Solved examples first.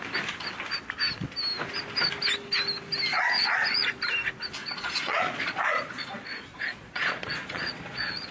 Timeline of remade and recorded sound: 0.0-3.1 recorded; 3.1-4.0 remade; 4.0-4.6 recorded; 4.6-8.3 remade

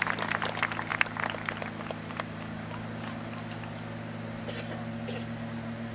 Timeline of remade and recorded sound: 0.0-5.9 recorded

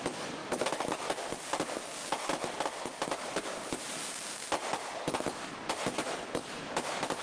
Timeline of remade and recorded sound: 0.0-7.2 recorded

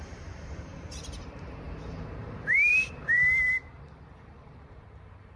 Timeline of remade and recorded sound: 0.0-5.4 remade

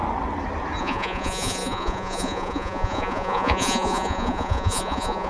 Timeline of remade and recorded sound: 0.0-0.8 recorded; 0.8-5.3 remade

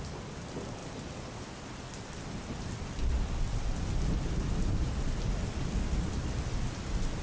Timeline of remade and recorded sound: 0.0-7.2 recorded